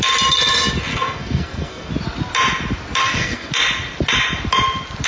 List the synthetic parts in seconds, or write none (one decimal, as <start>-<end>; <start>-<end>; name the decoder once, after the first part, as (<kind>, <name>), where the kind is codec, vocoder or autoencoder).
0.9-1.9 (codec, SNAC); 3.0-3.5